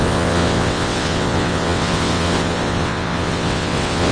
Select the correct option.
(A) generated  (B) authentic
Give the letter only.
A